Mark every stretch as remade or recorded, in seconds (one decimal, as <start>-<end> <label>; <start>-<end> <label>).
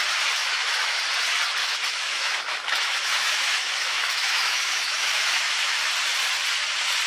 0.0-0.4 recorded; 0.4-1.0 remade; 1.0-1.6 recorded; 1.6-5.9 remade; 5.9-7.1 recorded